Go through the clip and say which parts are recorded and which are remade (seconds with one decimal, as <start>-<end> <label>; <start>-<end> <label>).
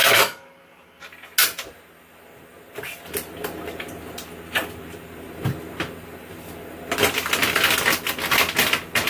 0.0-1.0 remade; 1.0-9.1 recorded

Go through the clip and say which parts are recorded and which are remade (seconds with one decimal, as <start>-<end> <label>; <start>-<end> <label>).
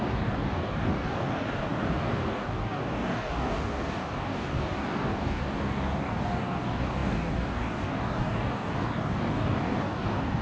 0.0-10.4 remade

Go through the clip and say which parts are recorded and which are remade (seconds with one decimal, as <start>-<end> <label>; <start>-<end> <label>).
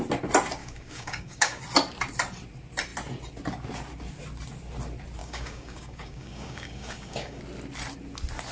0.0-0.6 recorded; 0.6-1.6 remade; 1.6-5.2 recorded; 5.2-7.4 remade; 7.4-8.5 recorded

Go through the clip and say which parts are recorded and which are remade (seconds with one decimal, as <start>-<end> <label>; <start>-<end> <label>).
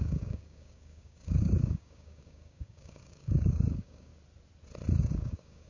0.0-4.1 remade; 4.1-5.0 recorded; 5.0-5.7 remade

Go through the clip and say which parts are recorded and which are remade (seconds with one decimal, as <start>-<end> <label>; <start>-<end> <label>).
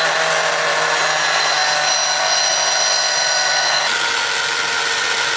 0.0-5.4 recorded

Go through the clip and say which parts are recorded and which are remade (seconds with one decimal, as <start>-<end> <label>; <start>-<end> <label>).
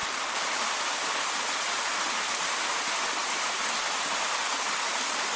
0.0-5.4 recorded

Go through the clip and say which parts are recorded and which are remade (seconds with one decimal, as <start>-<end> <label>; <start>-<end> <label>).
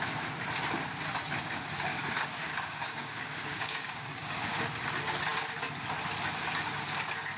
0.0-1.9 recorded; 1.9-4.5 remade; 4.5-7.4 recorded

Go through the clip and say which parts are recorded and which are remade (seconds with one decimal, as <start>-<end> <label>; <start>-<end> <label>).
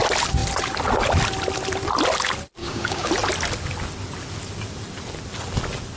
0.0-2.6 recorded; 2.6-3.1 remade; 3.1-6.0 recorded